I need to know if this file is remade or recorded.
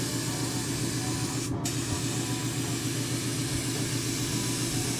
recorded